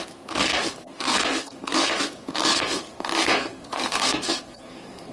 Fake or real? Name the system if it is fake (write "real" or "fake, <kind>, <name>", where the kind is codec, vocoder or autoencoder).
fake, codec, SNAC